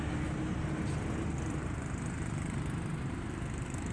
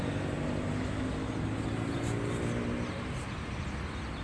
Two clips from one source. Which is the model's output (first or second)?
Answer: first